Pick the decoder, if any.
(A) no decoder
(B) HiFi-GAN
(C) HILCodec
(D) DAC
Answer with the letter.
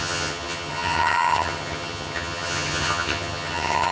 B